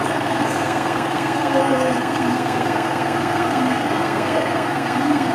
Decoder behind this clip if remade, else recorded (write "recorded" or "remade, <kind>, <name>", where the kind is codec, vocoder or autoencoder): remade, codec, SNAC